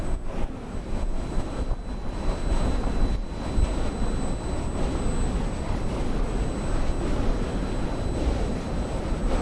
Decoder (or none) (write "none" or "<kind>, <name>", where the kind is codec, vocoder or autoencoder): none